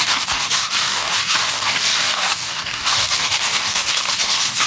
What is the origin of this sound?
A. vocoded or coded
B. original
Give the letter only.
A